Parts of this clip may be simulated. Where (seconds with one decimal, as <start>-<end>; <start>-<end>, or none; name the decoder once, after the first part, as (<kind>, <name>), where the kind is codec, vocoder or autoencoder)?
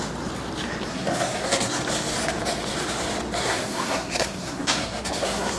0.9-1.8 (codec, SNAC); 3.4-5.6